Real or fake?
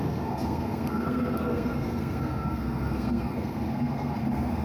fake